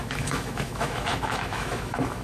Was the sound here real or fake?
fake